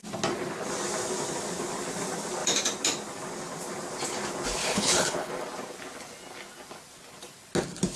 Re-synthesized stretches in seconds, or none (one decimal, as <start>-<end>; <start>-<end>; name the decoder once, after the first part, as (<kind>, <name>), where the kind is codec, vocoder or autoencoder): 4.6-5.3 (codec, HILCodec)